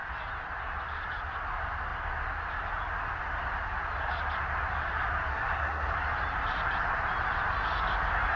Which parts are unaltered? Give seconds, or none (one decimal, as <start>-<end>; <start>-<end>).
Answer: 0.0-5.3; 5.9-8.4